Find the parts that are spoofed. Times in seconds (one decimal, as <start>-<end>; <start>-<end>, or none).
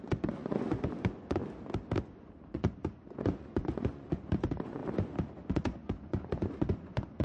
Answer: 0.0-1.4; 2.0-4.8; 5.5-7.2